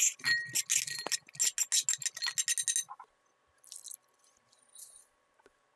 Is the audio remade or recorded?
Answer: recorded